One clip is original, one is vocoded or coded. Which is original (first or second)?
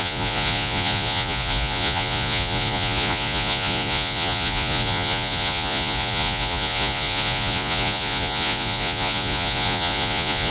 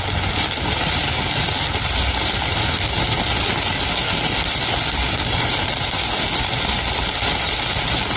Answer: second